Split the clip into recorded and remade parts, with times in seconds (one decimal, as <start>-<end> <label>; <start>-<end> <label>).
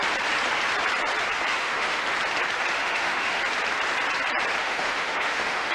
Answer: 0.0-1.5 recorded; 1.5-2.0 remade; 2.0-2.8 recorded; 2.8-3.4 remade; 3.4-4.6 recorded; 4.6-5.7 remade